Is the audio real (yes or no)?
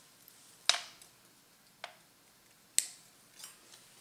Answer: yes